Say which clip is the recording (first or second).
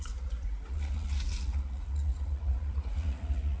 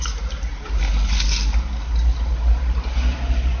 second